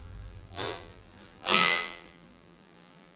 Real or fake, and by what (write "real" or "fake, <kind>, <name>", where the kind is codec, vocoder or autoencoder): fake, vocoder, BigVGAN v2